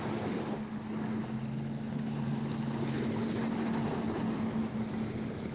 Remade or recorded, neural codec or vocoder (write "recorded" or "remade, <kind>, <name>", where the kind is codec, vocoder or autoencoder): recorded